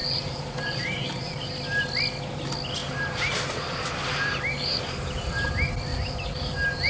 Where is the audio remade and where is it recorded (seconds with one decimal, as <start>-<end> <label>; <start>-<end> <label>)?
0.0-1.5 remade; 1.5-2.8 recorded; 2.8-5.5 remade; 5.5-5.9 recorded; 5.9-6.9 remade